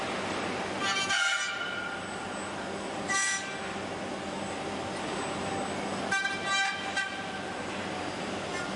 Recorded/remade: recorded